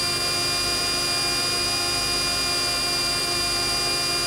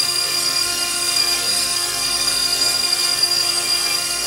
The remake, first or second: second